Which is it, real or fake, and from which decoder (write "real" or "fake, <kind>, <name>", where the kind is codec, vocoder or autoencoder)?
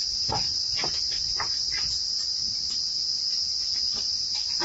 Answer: real